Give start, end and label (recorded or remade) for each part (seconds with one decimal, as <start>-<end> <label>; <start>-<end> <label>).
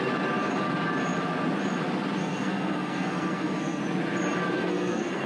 0.0-2.2 recorded; 2.2-3.8 remade; 3.8-4.6 recorded; 4.6-5.3 remade